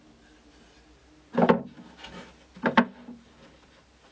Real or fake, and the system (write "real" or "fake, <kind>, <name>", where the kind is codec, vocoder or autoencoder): real